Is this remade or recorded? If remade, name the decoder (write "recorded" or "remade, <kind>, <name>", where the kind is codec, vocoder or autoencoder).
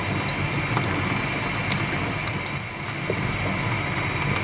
recorded